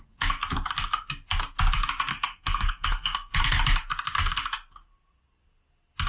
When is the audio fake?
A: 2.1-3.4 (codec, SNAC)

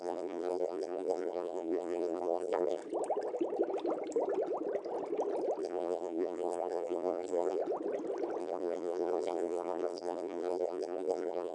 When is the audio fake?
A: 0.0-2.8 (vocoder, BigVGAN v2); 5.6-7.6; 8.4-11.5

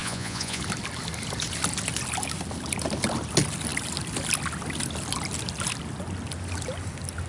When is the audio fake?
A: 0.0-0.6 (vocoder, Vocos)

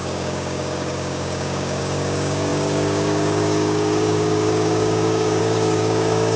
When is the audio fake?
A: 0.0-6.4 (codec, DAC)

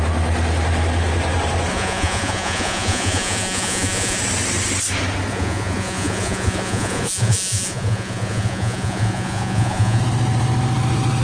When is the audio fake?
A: 1.7-4.2 (vocoder, Vocos); 5.3-10.0

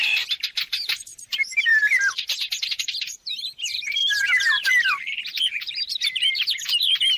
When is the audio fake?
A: 0.0-7.2 (vocoder, BigVGAN v2)

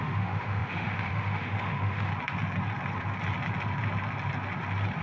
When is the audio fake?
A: 0.0-2.1 (autoencoder, DAC-VAE)